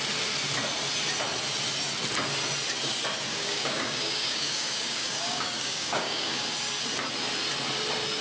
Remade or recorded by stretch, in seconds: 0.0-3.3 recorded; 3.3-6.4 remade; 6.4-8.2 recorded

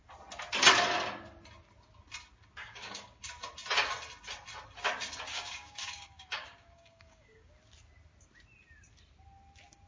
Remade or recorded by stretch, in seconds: 0.0-2.6 recorded; 2.6-3.2 remade; 3.2-5.3 recorded; 5.3-7.5 remade; 7.5-9.9 recorded

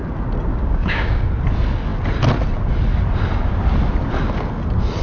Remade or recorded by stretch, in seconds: 0.0-0.5 recorded; 0.5-1.3 remade; 1.3-5.0 recorded